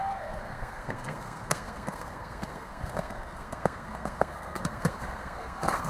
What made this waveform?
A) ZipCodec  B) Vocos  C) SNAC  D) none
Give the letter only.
C